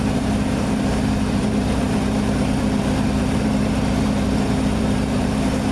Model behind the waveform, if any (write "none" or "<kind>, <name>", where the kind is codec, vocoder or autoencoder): vocoder, BigVGAN v2